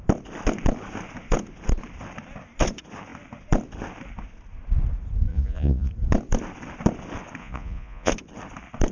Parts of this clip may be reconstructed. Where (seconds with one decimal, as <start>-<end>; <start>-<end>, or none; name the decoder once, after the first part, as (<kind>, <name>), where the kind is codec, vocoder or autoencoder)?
5.3-5.9 (vocoder, Vocos); 7.4-8.1